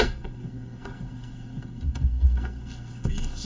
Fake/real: fake